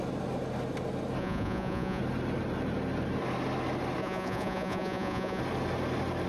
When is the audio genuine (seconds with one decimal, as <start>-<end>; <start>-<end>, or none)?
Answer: 0.0-1.2; 2.0-4.0; 5.4-6.3